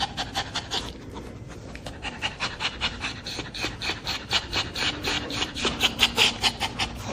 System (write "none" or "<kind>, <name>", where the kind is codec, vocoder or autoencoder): vocoder, BigVGAN v2